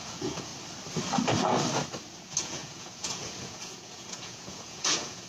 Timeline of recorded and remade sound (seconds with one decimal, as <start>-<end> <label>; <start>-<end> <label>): 0.0-0.5 remade; 0.5-2.2 recorded; 2.2-5.3 remade